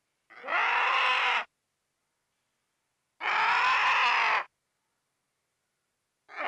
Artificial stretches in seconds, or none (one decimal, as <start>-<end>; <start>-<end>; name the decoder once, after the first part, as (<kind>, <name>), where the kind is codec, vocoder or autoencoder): none